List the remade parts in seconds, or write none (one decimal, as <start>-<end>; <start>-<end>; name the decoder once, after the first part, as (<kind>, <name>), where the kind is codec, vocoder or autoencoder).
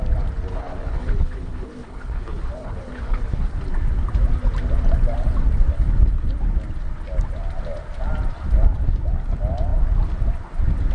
0.5-3.6 (codec, HILCodec)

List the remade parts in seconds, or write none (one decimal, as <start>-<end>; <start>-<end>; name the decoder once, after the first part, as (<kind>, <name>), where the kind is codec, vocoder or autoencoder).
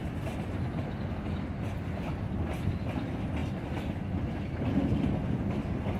3.4-5.3 (vocoder, BigVGAN v2)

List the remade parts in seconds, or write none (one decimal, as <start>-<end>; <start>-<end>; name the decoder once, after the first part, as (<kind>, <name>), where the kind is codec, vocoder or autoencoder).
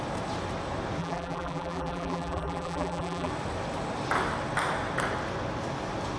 1.0-3.3 (vocoder, BigVGAN v2)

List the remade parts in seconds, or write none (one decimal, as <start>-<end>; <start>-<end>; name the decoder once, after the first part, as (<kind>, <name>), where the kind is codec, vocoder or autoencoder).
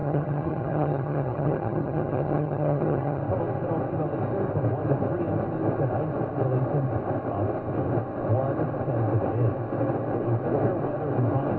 0.0-3.2 (vocoder, HiFi-GAN)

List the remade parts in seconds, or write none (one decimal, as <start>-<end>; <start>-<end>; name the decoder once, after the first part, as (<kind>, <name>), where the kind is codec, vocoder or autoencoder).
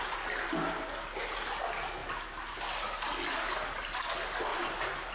4.5-5.1 (vocoder, BigVGAN v2)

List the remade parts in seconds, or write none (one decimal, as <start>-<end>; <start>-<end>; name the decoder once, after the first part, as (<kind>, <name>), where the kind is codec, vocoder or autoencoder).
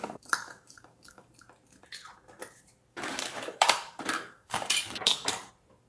0.0-1.3 (codec, DAC); 2.9-5.5